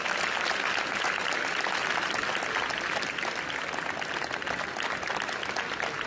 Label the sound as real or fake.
real